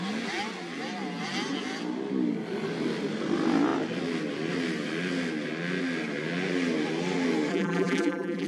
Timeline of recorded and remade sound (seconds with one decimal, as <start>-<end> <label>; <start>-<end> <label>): 0.0-7.5 recorded; 7.5-8.5 remade